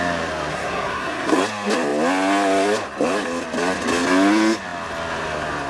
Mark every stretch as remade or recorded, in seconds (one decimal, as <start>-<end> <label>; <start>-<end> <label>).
0.0-0.5 recorded; 0.5-1.4 remade; 1.4-5.7 recorded